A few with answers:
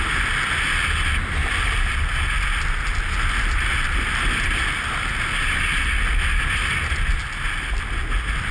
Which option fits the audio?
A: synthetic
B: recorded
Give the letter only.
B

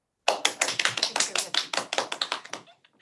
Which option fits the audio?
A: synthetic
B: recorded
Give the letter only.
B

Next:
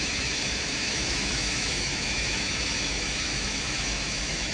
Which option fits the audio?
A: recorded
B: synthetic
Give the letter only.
B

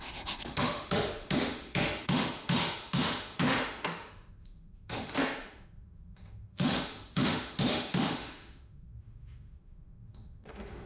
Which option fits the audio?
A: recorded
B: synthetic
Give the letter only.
B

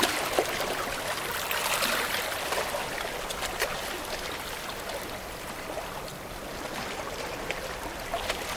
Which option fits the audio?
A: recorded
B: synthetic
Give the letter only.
A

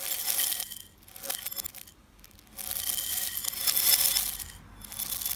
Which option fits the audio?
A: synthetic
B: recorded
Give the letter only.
B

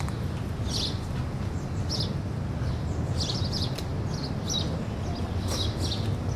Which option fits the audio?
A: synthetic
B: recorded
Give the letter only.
B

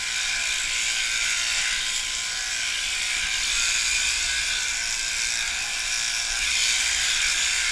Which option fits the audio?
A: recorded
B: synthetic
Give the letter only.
A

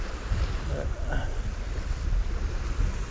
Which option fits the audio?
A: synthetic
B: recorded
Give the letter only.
B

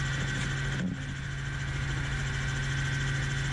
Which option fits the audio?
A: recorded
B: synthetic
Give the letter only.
A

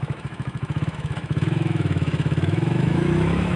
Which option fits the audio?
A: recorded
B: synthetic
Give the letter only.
B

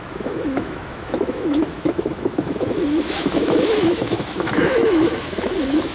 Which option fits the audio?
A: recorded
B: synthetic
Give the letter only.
B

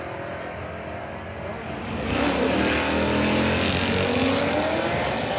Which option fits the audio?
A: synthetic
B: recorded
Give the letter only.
B